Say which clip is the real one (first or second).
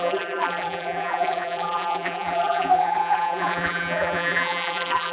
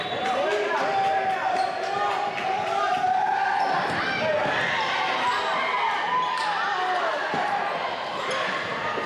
second